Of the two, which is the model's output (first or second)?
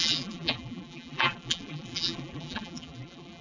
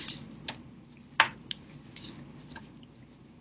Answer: first